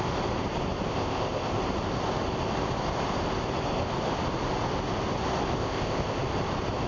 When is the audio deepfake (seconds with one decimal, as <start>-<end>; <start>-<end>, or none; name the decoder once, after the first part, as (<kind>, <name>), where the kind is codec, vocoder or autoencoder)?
0.9-1.6 (codec, ZipCodec); 5.6-6.2